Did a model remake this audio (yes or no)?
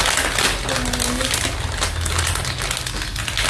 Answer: no